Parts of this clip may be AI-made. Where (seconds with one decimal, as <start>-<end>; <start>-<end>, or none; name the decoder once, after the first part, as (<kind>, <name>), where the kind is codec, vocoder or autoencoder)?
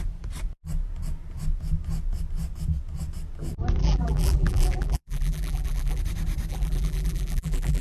3.8-6.0 (vocoder, BigVGAN v2); 6.5-7.8